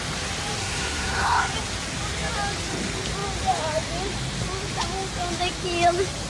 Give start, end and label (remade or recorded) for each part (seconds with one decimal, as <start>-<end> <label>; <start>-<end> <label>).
0.0-0.6 recorded; 0.6-1.5 remade; 1.5-6.3 recorded

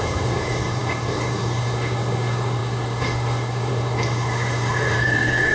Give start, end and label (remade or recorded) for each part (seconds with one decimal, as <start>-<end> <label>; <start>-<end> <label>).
0.0-5.5 remade